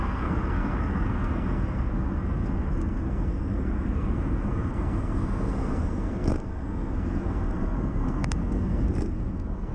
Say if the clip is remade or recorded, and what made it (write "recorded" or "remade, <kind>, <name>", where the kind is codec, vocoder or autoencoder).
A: remade, codec, SNAC